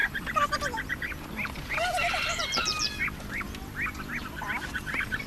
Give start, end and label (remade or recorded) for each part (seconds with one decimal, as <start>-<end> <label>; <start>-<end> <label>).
0.0-5.3 recorded